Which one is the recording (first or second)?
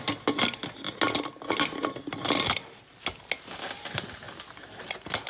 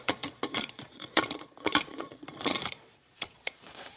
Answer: first